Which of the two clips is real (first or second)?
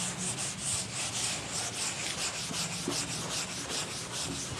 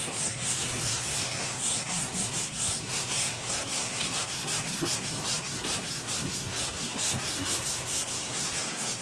first